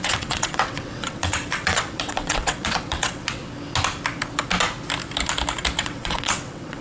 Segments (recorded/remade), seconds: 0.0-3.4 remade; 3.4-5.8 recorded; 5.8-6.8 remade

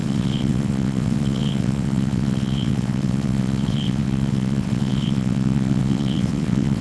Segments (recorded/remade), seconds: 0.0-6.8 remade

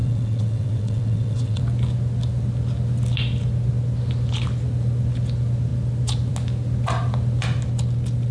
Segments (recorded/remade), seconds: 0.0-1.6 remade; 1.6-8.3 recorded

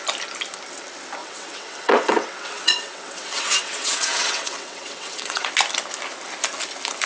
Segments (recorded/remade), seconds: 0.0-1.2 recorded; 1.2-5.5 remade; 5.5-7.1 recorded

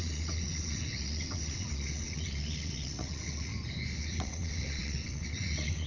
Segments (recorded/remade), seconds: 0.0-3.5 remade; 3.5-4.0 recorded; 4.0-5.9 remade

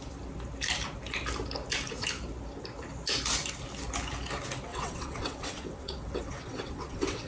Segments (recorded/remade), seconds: 0.0-4.7 recorded; 4.7-7.3 remade

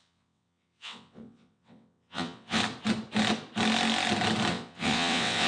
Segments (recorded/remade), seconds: 0.0-2.6 remade; 2.6-4.5 recorded; 4.5-5.5 remade

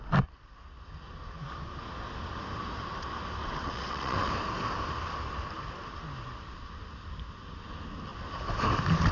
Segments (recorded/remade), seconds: 0.0-3.4 recorded; 3.4-4.3 remade; 4.3-9.1 recorded